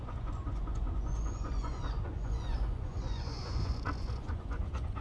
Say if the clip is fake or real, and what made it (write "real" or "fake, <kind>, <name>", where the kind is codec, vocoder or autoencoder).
fake, vocoder, Vocos